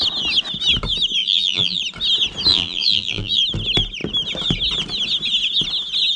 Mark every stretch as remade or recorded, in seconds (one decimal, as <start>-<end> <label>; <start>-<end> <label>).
0.0-1.2 recorded; 1.2-1.8 remade; 1.8-2.5 recorded; 2.5-3.4 remade; 3.4-6.2 recorded